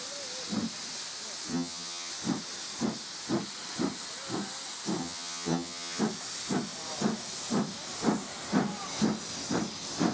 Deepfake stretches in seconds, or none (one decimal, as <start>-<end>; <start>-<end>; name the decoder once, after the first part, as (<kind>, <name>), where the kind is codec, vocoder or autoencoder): 1.5-2.1 (vocoder, HiFi-GAN); 5.0-6.0